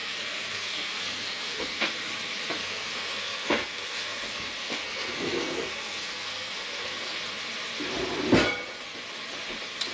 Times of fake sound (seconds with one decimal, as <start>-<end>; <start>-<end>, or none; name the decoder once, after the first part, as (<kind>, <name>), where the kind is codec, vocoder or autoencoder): 0.0-1.9 (codec, SNAC); 2.6-7.2